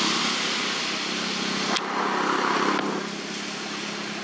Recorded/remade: recorded